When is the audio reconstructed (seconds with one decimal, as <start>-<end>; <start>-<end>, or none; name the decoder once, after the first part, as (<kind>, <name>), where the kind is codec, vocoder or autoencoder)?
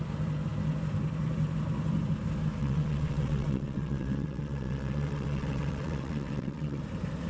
2.6-6.8 (vocoder, WaveNeXt)